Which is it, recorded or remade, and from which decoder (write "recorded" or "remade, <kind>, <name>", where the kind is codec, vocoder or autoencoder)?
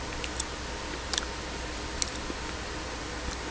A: recorded